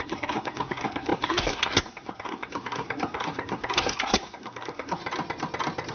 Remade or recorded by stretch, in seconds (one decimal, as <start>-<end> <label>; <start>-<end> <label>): 0.0-5.0 remade; 5.0-5.9 recorded